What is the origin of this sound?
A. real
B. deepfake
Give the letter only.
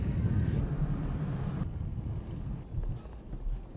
A